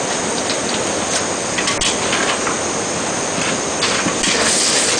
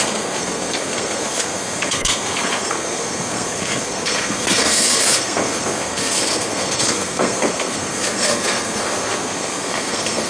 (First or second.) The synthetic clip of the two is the second